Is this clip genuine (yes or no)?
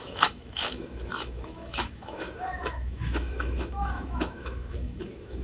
no